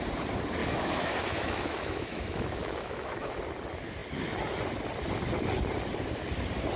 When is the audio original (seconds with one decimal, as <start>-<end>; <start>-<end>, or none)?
0.0-0.6; 3.4-6.8